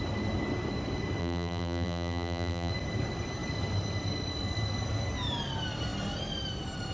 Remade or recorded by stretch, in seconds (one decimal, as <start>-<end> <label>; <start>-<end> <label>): 0.0-1.2 recorded; 1.2-2.7 remade; 2.7-6.9 recorded